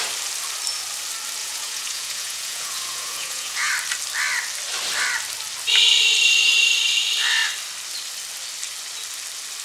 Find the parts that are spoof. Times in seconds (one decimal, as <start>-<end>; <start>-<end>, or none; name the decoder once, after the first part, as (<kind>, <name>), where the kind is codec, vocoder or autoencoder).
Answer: 1.4-3.7 (vocoder, Vocos)